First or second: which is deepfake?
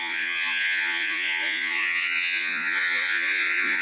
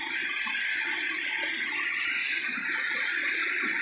first